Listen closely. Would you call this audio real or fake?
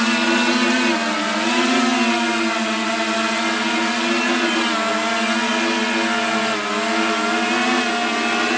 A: real